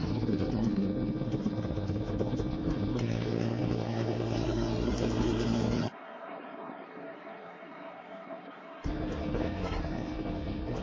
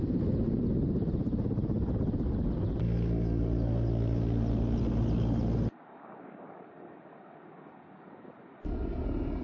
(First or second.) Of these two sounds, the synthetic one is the first